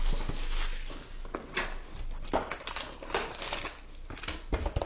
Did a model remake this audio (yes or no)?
no